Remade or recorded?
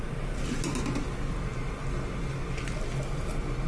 recorded